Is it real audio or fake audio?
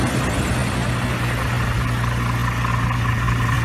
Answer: real